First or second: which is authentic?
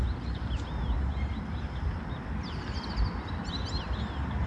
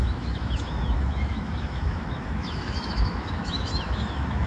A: first